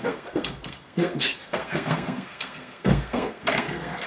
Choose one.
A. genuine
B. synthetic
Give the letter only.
B